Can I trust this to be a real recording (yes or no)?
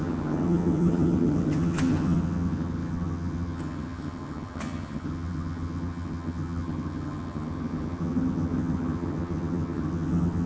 no